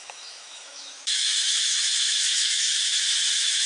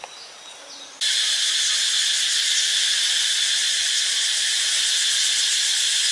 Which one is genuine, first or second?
second